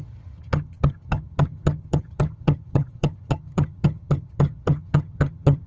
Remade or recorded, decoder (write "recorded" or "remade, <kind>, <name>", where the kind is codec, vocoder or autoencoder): remade, vocoder, HiFi-GAN